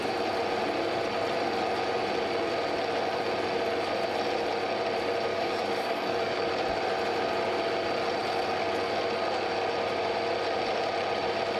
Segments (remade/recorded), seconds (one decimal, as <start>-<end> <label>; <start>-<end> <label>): 0.0-5.3 recorded; 5.3-6.5 remade; 6.5-11.6 recorded